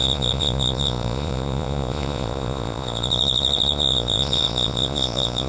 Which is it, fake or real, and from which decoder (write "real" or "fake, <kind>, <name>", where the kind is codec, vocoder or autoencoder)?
fake, vocoder, Vocos